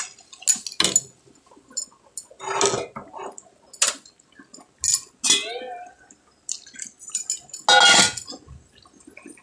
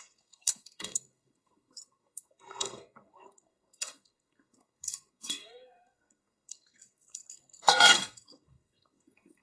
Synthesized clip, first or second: second